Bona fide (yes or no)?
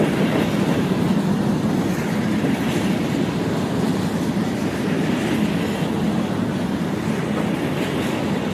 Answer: yes